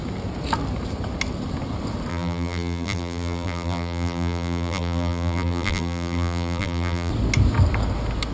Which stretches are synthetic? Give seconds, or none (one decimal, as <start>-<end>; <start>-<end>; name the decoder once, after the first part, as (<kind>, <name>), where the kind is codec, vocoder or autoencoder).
2.1-7.1 (vocoder, BigVGAN v2)

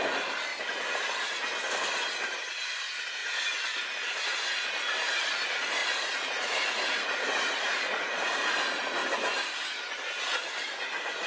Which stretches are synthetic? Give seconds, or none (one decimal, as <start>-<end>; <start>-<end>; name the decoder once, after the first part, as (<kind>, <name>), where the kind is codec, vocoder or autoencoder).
0.0-0.5 (vocoder, Vocos); 2.6-3.2; 5.2-9.0; 10.2-11.3

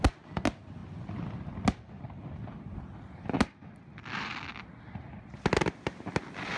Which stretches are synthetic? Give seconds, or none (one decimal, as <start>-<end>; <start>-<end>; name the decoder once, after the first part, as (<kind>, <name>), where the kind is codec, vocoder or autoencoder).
none